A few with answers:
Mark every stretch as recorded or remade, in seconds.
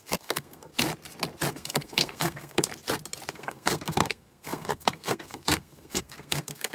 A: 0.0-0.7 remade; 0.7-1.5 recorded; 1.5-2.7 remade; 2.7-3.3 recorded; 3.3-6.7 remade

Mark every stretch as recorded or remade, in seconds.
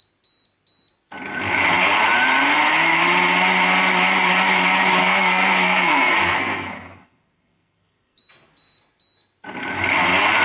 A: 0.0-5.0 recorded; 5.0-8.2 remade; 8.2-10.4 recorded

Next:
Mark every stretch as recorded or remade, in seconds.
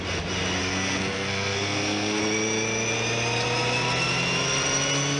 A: 0.0-0.6 recorded; 0.6-2.2 remade; 2.2-5.2 recorded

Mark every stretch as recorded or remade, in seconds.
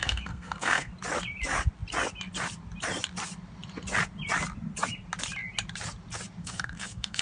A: 0.0-0.9 remade; 0.9-6.4 recorded; 6.4-7.2 remade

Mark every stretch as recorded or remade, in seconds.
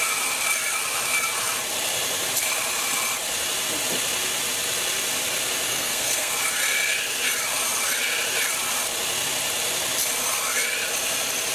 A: 0.0-5.7 recorded; 5.7-6.3 remade; 6.3-11.5 recorded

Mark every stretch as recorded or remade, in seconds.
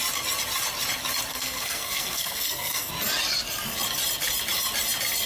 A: 0.0-1.3 recorded; 1.3-2.9 remade; 2.9-5.3 recorded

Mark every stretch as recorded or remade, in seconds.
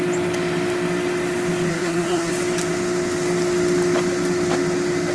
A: 0.0-1.7 recorded; 1.7-2.3 remade; 2.3-5.1 recorded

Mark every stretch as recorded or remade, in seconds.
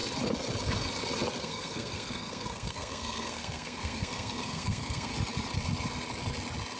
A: 0.0-1.4 recorded; 1.4-5.1 remade; 5.1-6.8 recorded